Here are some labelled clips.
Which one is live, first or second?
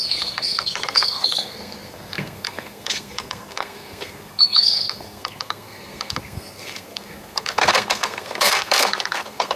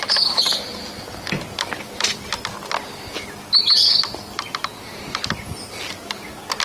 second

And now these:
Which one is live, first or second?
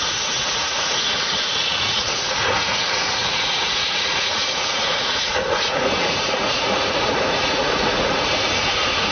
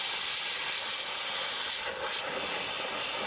second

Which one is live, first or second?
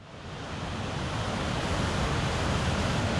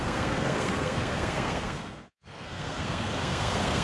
first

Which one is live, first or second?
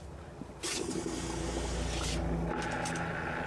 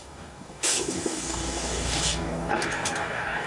first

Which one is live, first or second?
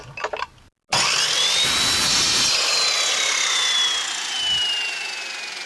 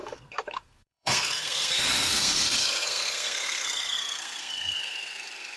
first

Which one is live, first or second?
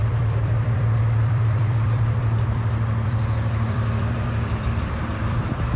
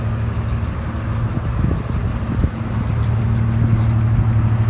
second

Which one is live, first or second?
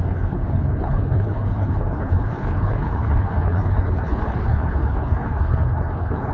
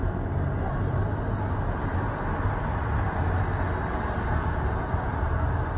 second